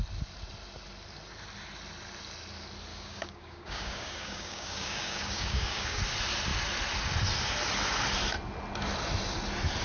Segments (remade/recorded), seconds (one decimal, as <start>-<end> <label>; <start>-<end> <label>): 0.0-2.9 recorded; 2.9-6.0 remade; 6.0-9.8 recorded